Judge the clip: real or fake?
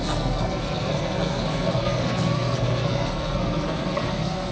fake